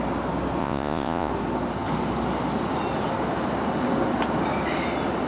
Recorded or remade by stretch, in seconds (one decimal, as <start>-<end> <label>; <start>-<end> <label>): 0.0-0.6 recorded; 0.6-1.3 remade; 1.3-5.3 recorded